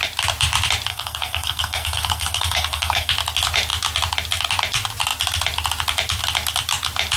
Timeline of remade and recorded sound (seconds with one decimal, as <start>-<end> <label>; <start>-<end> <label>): 0.0-0.9 recorded; 0.9-3.1 remade; 3.1-7.2 recorded